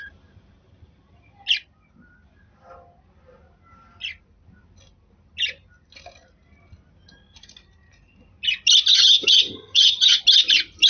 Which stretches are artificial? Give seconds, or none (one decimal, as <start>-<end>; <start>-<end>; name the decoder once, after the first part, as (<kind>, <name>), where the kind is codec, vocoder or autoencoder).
8.9-10.2 (vocoder, HiFi-GAN)